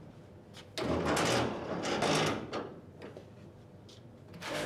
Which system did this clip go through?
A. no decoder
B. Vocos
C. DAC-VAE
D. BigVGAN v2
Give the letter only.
A